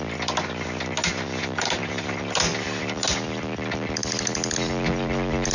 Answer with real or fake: real